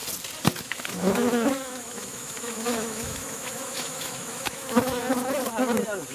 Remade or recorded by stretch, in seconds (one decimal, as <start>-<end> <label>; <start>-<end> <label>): 0.0-0.6 recorded; 0.6-5.0 remade; 5.0-6.1 recorded